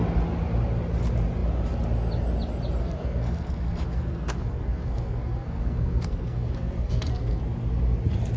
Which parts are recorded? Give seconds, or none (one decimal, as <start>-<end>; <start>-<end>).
0.0-2.8; 7.4-8.4